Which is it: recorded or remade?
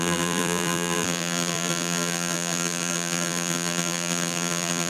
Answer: remade